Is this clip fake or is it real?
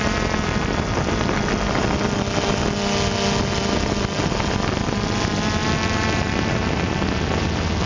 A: real